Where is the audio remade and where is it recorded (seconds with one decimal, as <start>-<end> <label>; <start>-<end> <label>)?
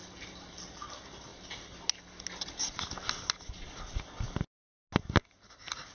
0.0-5.9 recorded